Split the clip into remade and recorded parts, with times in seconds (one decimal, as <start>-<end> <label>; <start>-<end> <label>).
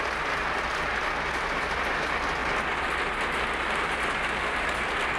0.0-5.2 recorded